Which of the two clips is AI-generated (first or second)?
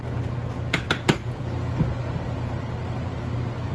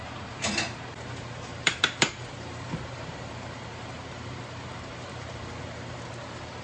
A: second